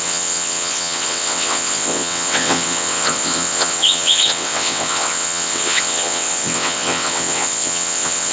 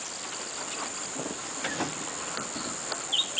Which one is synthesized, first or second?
first